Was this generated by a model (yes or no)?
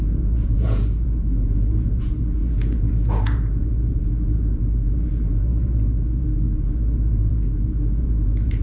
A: yes